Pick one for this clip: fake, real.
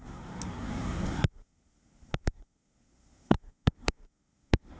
fake